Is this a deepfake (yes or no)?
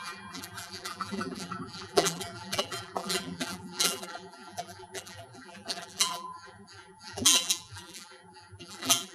yes